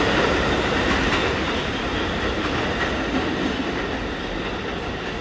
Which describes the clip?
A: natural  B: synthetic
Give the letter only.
A